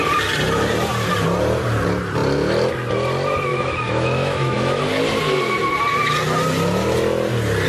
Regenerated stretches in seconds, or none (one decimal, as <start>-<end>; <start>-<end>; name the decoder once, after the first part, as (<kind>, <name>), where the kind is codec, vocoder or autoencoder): 3.5-4.8 (autoencoder, DAC-VAE)